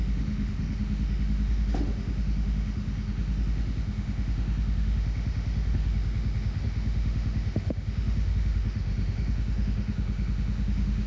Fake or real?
fake